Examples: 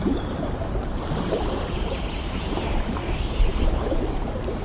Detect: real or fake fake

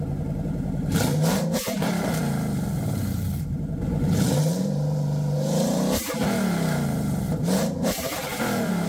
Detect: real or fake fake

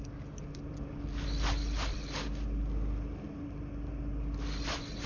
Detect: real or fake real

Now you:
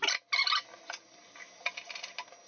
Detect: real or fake real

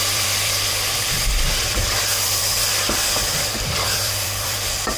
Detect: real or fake fake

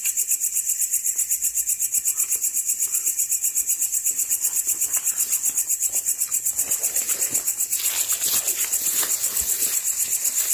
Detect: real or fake real